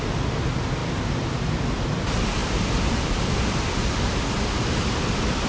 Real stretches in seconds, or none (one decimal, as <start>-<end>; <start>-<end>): 0.0-5.5